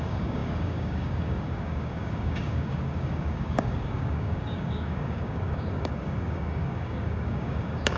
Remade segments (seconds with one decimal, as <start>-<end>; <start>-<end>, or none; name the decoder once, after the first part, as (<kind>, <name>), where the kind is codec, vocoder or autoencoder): 0.0-8.0 (codec, DAC)